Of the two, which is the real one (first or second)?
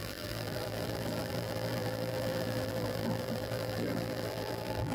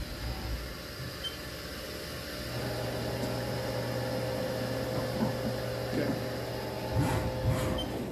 second